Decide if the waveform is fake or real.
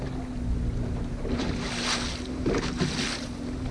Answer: real